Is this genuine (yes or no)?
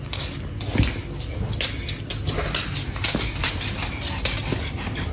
yes